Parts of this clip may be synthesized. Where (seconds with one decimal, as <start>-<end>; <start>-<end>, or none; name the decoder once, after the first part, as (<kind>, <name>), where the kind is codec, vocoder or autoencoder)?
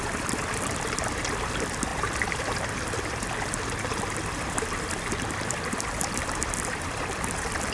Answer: 0.0-7.7 (vocoder, BigVGAN v2)